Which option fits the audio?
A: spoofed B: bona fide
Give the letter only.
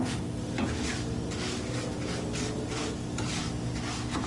B